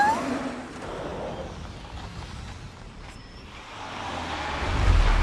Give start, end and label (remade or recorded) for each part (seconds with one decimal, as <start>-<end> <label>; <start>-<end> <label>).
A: 0.0-2.1 recorded; 2.1-4.1 remade; 4.1-5.2 recorded